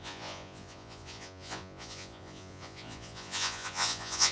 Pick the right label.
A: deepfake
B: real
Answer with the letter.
A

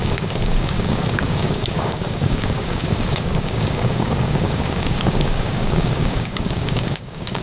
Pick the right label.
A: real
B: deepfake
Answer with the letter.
B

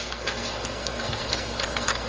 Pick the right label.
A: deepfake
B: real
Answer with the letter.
A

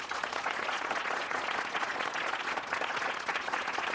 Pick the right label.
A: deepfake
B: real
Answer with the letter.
A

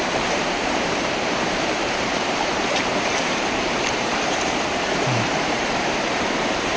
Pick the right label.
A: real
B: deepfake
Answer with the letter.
B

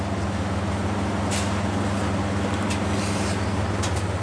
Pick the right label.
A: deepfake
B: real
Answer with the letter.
B